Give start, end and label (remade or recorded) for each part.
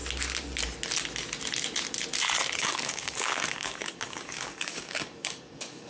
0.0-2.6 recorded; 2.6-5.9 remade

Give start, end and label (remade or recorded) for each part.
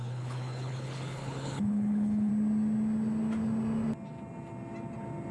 0.0-2.3 remade; 2.3-5.3 recorded